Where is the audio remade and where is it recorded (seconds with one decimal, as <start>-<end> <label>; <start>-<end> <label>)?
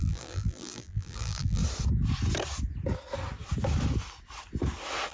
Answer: 0.0-1.6 remade; 1.6-5.1 recorded